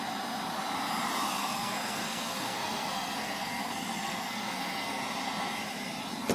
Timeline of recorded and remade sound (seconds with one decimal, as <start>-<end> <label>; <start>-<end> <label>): 0.0-1.4 recorded; 1.4-5.0 remade; 5.0-6.3 recorded

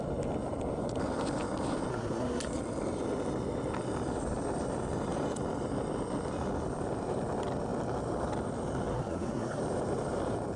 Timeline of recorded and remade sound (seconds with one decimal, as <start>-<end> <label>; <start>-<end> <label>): 0.0-1.9 recorded; 1.9-2.4 remade; 2.4-8.9 recorded; 8.9-9.6 remade; 9.6-10.6 recorded

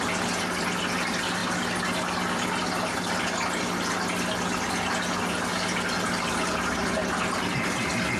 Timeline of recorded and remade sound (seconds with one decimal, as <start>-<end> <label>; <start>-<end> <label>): 0.0-8.2 recorded

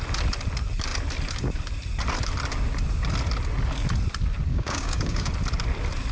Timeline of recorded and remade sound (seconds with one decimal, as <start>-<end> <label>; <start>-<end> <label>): 0.0-4.5 recorded; 4.5-5.3 remade; 5.3-6.1 recorded

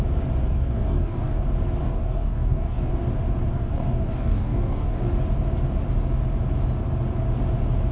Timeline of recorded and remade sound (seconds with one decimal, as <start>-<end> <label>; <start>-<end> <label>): 0.0-0.5 recorded; 0.5-1.4 remade; 1.4-1.8 recorded; 1.8-2.9 remade; 2.9-3.5 recorded; 3.5-5.1 remade; 5.1-7.9 recorded

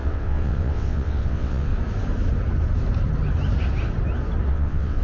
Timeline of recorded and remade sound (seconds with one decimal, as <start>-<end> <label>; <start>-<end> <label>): 0.0-1.7 remade; 1.7-4.5 recorded; 4.5-5.0 remade

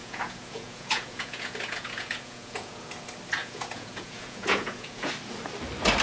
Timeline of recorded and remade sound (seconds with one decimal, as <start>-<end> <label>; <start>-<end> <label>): 0.0-2.9 remade; 2.9-3.4 recorded; 3.4-5.1 remade; 5.1-6.0 recorded